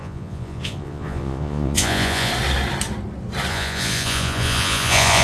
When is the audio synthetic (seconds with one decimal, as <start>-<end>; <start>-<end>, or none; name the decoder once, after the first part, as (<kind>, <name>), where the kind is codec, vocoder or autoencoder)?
0.0-2.3 (vocoder, Vocos); 3.5-5.2